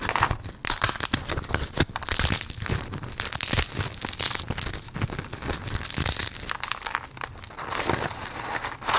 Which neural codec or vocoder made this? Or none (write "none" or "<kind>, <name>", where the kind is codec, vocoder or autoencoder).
none